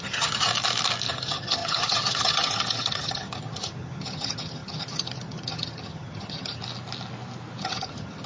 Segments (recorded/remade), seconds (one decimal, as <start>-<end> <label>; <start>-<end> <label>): 0.0-0.5 remade; 0.5-1.1 recorded; 1.1-6.6 remade; 6.6-7.6 recorded; 7.6-8.3 remade